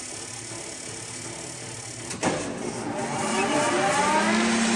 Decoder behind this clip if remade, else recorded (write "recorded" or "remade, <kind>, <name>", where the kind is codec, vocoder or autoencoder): recorded